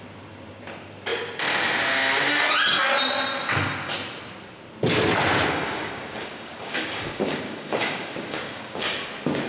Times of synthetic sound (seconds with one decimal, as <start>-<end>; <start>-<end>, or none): 5.5-9.1